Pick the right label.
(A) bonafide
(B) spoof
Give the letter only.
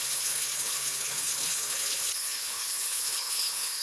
B